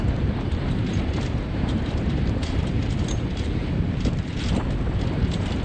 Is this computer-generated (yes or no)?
yes